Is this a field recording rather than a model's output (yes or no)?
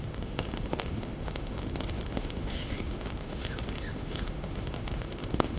no